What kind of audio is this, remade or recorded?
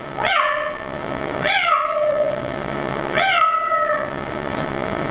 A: remade